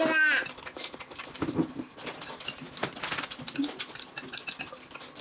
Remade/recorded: recorded